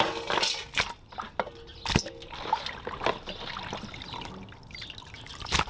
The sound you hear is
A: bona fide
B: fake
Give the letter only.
A